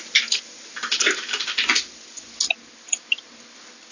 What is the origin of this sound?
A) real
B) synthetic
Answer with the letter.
A